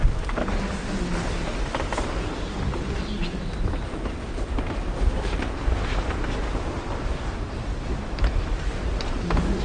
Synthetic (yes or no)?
no